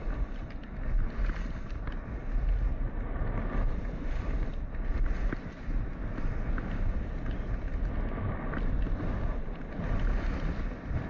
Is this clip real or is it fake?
real